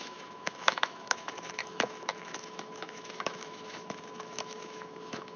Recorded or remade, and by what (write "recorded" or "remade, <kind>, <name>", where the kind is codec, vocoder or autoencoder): remade, autoencoder, DAC-VAE